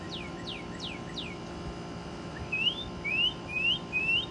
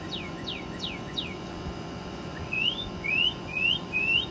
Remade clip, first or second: second